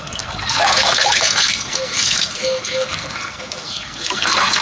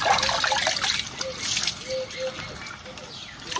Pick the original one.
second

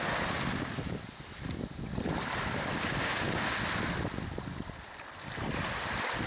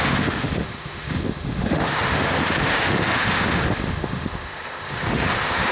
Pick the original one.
first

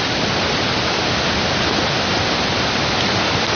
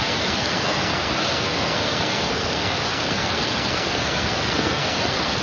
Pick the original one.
first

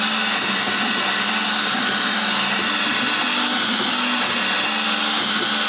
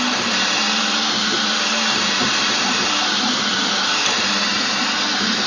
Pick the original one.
first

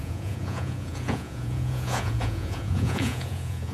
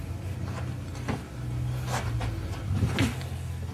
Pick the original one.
second